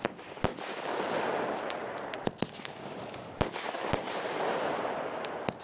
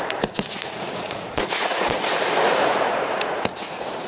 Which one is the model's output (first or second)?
second